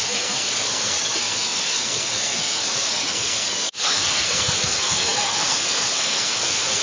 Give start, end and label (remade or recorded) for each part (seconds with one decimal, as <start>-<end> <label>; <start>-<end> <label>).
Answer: 0.0-6.8 remade